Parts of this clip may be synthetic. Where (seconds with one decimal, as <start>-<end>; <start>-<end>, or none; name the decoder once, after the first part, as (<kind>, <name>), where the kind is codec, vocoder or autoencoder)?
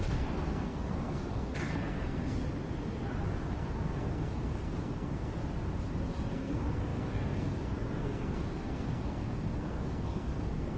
0.0-2.4 (codec, SNAC); 3.5-5.4; 6.3-10.8